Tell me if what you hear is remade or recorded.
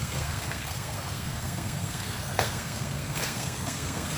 remade